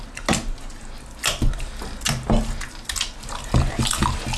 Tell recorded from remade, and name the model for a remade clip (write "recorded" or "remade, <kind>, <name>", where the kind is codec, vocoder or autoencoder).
recorded